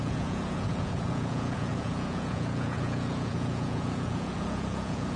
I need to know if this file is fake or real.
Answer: fake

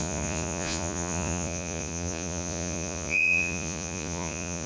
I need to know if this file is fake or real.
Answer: fake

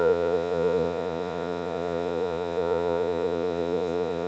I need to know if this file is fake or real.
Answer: fake